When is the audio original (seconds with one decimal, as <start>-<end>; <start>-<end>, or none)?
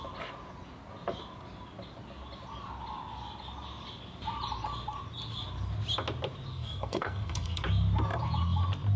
0.0-6.5; 7.6-9.0